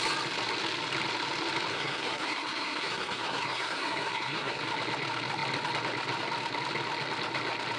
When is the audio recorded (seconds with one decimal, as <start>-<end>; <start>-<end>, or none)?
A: 0.0-1.7; 4.6-7.8